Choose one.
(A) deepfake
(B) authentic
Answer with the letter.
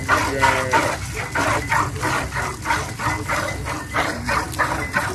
B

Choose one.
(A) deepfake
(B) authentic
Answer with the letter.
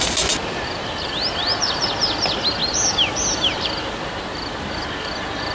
B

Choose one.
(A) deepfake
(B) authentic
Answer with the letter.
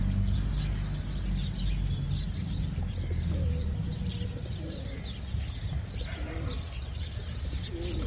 B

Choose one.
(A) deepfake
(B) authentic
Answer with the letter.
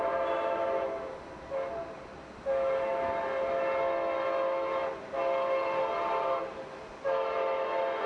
B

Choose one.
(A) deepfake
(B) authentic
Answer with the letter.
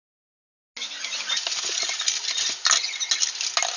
B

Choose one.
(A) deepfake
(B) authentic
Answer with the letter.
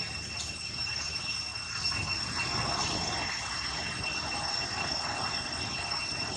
B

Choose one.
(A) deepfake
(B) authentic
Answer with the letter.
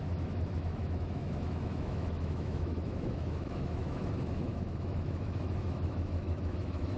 A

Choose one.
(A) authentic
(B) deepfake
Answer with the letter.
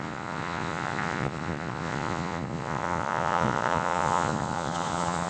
B